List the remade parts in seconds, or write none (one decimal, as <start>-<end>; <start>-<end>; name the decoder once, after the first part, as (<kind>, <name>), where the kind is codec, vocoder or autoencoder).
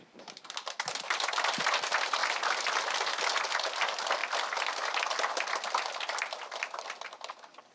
none